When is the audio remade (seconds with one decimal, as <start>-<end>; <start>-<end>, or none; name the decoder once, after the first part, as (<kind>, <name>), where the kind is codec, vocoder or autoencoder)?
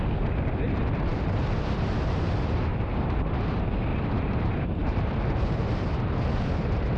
2.7-3.2 (vocoder, BigVGAN v2); 3.9-5.9